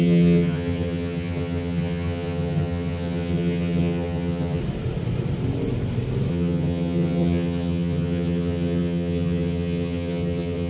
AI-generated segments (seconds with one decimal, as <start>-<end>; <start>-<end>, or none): 0.0-4.6; 6.3-10.7